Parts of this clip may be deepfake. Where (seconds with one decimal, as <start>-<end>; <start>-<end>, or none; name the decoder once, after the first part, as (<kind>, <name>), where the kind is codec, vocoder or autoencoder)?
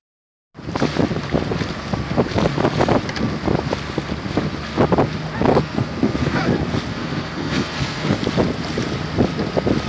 5.5-6.4 (codec, SNAC); 6.9-8.2